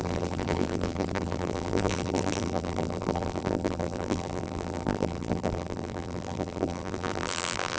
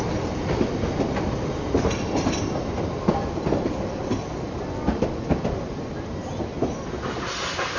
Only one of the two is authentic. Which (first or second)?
second